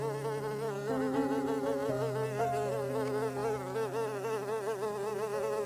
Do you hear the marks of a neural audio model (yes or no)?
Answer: no